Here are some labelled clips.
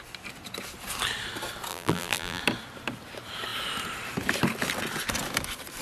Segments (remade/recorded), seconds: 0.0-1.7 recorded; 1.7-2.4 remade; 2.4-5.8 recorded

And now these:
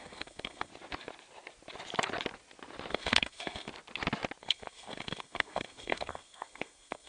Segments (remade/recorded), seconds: 0.0-0.7 remade; 0.7-2.9 recorded; 2.9-3.7 remade; 3.7-4.4 recorded; 4.4-7.1 remade

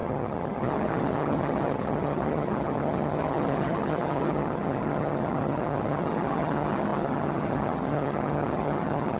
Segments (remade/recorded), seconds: 0.0-9.2 remade

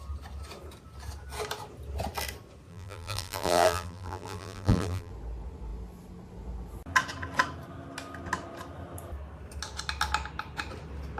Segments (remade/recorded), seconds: 0.0-2.7 recorded; 2.7-5.1 remade; 5.1-11.2 recorded